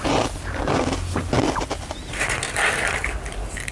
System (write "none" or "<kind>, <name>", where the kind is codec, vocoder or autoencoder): none